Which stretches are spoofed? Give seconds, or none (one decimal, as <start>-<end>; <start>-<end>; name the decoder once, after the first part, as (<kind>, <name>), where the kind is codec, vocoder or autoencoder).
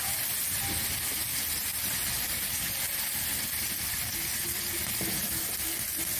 none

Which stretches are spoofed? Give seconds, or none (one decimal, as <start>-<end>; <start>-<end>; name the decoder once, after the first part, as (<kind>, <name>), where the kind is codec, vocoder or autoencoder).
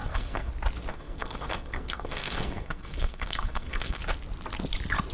0.0-0.5 (codec, SNAC); 0.9-4.0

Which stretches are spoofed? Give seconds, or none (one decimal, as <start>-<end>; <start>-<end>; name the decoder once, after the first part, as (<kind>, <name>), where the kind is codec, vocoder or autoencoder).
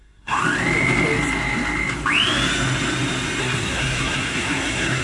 0.0-0.4 (codec, SNAC); 3.4-5.0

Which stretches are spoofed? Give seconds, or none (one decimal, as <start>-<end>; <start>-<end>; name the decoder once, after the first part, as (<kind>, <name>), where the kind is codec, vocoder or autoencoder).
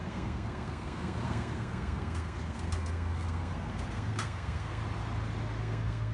0.0-4.8 (codec, SNAC); 5.6-6.1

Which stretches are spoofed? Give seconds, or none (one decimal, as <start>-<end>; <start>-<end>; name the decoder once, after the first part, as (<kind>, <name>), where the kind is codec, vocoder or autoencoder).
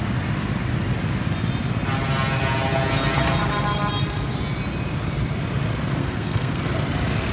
6.0-6.6 (codec, SNAC)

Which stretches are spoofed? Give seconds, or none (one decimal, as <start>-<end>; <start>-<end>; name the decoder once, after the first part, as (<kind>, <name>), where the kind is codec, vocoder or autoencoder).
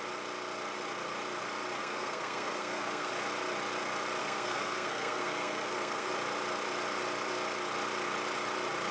1.8-3.1 (codec, SNAC); 4.2-6.1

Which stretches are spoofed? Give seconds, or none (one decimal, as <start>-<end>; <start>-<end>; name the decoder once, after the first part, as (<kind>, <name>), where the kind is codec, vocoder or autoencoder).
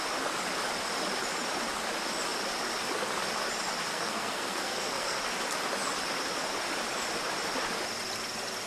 3.9-5.2 (codec, SNAC)